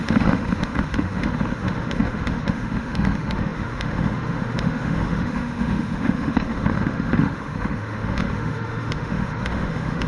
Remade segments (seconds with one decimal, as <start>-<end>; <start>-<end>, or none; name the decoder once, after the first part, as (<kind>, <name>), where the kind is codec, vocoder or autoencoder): 0.0-10.1 (autoencoder, DAC-VAE)